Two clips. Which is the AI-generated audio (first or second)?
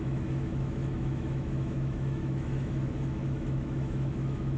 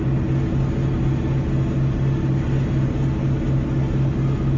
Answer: first